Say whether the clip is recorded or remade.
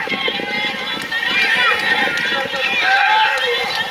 recorded